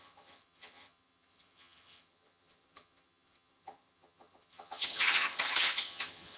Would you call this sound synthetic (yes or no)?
yes